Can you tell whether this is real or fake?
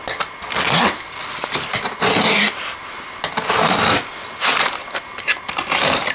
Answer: real